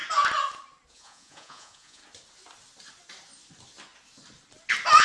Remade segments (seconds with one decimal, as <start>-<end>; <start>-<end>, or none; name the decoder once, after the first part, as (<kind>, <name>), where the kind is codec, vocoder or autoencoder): 0.9-2.0 (vocoder, Vocos)